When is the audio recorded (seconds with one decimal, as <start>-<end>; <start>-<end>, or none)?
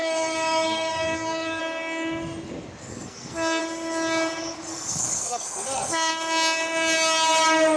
1.6-2.9; 3.6-4.7; 6.1-7.8